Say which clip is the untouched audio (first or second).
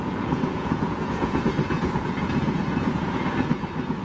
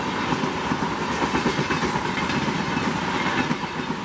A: second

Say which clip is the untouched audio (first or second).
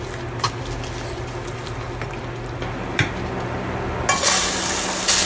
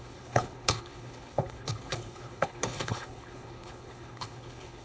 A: first